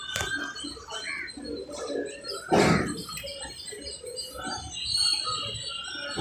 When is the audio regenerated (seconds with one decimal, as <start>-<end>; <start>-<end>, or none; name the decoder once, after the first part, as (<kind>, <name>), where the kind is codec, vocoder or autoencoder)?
none